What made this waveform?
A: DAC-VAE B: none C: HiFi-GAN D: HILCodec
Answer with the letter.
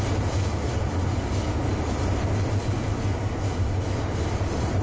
B